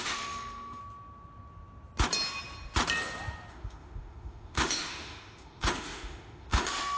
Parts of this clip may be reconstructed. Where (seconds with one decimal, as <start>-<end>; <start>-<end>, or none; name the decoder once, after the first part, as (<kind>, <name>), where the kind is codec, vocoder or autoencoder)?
0.0-0.8 (autoencoder, DAC-VAE); 3.5-7.0